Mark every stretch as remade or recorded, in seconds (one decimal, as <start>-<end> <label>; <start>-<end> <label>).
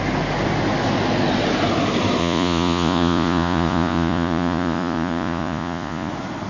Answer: 0.0-2.2 recorded; 2.2-6.1 remade; 6.1-6.5 recorded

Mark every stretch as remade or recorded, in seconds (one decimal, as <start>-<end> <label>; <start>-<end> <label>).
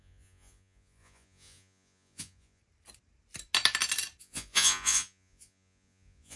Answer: 0.0-2.6 remade; 2.6-4.2 recorded; 4.2-6.4 remade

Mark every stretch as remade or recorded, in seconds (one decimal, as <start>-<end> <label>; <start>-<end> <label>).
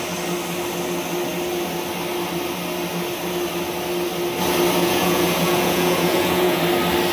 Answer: 0.0-4.8 recorded; 4.8-6.6 remade; 6.6-7.1 recorded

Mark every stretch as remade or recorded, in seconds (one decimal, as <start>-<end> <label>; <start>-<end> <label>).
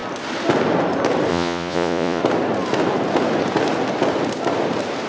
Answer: 0.0-1.3 recorded; 1.3-2.2 remade; 2.2-5.1 recorded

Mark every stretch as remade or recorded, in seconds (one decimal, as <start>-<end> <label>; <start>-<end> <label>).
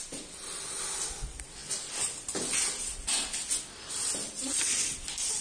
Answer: 0.0-5.4 recorded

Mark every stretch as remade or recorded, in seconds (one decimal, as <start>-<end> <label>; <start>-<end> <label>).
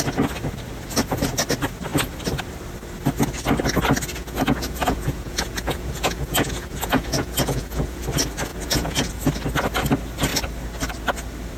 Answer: 0.0-4.2 recorded; 4.2-8.0 remade; 8.0-8.5 recorded; 8.5-9.1 remade; 9.1-11.6 recorded